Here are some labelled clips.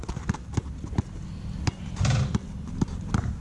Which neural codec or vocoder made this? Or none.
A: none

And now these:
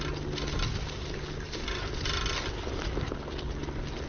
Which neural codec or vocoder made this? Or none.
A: none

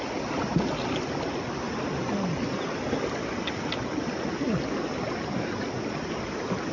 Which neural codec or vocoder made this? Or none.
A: none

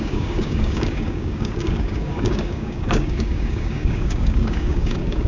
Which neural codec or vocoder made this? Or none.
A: codec, DAC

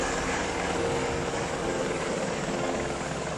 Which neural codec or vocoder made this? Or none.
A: codec, DAC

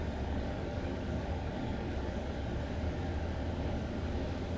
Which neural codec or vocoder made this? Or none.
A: codec, DAC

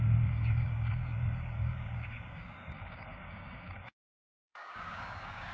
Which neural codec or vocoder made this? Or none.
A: codec, DAC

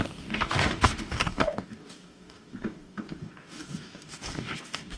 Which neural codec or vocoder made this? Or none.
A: codec, DAC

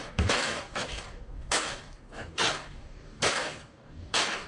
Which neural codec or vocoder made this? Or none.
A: codec, DAC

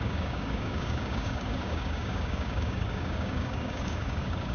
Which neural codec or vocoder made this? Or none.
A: codec, DAC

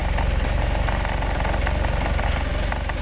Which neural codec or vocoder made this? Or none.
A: none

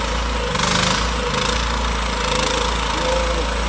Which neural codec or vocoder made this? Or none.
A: none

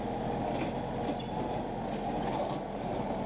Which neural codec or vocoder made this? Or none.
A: none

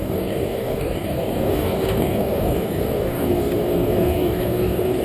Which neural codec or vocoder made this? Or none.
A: codec, DAC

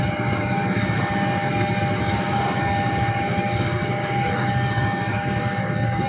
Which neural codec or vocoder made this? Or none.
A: codec, DAC